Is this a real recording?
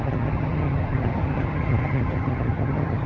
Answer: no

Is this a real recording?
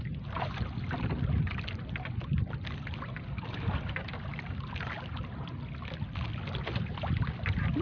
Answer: yes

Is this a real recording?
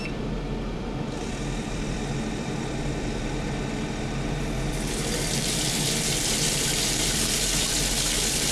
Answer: no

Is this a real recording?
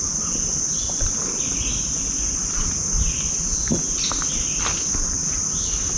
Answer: yes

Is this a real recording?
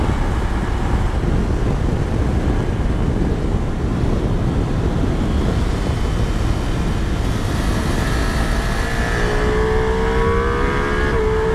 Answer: yes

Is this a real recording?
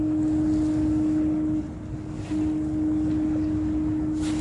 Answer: yes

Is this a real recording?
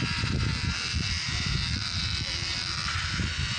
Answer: no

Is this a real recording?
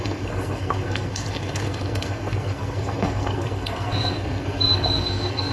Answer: no